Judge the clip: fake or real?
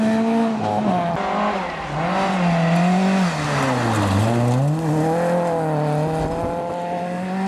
real